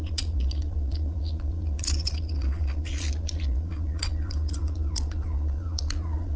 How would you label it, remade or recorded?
remade